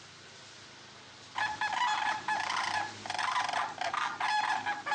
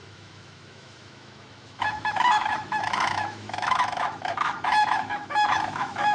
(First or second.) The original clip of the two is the first